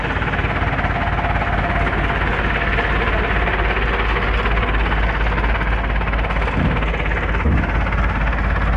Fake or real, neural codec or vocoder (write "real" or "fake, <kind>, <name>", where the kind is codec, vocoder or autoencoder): real